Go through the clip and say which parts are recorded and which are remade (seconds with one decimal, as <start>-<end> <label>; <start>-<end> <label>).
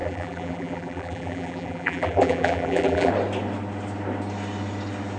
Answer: 0.0-3.1 remade; 3.1-5.2 recorded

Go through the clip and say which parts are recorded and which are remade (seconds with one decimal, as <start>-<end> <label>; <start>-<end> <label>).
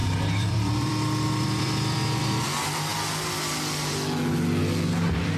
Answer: 0.0-2.2 remade; 2.2-5.4 recorded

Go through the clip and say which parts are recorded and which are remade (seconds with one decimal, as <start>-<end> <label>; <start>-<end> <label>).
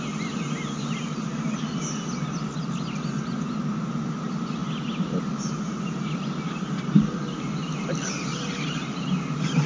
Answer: 0.0-9.7 recorded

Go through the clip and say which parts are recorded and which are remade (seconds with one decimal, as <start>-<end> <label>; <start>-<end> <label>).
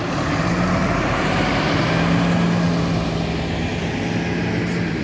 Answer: 0.0-0.8 recorded; 0.8-1.8 remade; 1.8-5.0 recorded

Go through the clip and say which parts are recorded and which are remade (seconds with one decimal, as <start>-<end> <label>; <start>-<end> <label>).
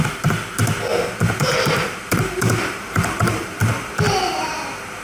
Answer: 0.0-0.9 recorded; 0.9-3.9 remade; 3.9-5.0 recorded